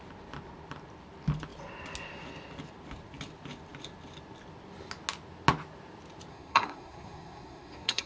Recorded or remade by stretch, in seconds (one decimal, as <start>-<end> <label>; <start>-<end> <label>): 0.0-6.3 recorded; 6.3-8.1 remade